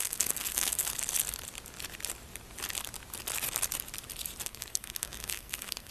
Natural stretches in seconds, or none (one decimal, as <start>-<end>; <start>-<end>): 0.9-4.4